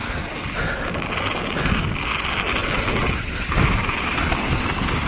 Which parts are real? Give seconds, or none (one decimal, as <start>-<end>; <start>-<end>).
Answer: 0.0-5.1